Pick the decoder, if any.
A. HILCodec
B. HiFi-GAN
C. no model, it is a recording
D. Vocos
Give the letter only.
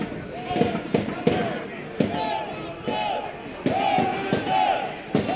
C